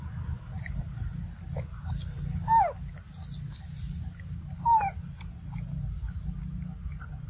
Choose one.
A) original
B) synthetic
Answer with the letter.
A